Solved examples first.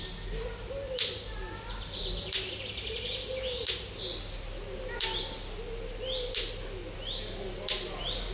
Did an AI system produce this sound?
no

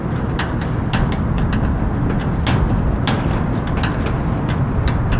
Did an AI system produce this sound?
no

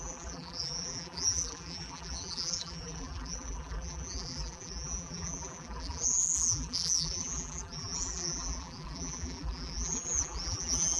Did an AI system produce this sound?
yes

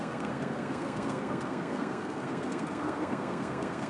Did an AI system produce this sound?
yes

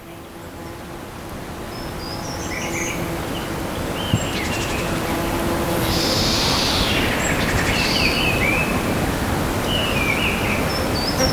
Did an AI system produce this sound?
no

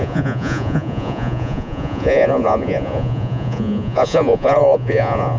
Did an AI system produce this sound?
yes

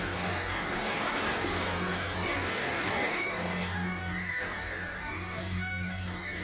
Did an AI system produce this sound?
yes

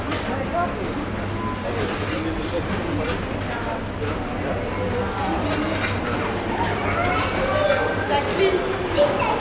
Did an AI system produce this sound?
no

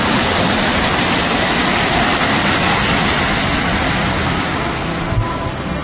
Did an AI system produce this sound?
no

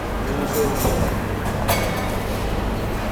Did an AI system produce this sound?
no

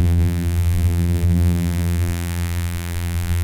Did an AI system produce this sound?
yes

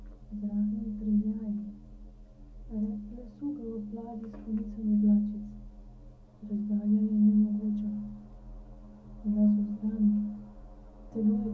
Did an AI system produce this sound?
no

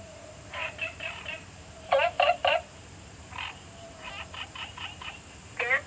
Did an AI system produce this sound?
yes